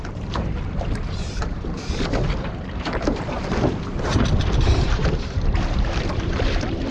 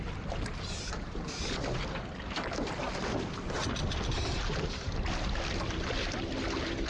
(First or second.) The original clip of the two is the second